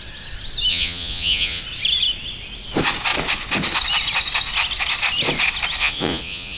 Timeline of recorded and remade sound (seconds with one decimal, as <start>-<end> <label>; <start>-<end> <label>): 0.0-0.7 recorded; 0.7-1.6 remade; 1.6-5.8 recorded; 5.8-6.6 remade